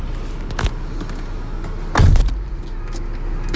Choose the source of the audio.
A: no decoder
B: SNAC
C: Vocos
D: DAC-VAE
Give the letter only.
A